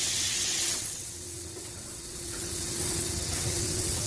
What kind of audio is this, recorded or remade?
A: remade